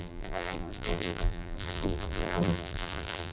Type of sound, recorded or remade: remade